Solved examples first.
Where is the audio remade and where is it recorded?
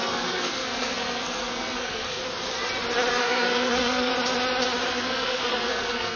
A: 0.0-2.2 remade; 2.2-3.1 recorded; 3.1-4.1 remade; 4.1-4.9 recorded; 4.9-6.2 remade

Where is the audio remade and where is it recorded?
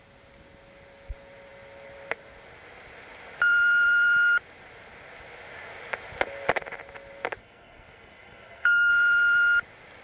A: 0.0-7.4 recorded; 7.4-8.9 remade; 8.9-10.0 recorded